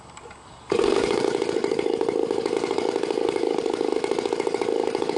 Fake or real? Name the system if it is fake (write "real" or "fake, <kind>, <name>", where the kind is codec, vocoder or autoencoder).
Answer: fake, codec, DAC